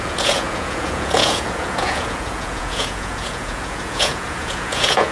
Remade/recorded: remade